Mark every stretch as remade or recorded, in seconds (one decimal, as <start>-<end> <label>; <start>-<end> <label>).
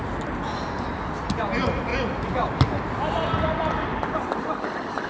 0.0-0.9 remade; 0.9-5.1 recorded